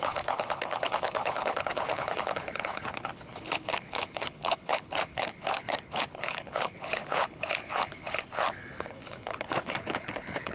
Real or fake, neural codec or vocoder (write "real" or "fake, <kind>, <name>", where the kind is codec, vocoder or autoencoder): fake, codec, HILCodec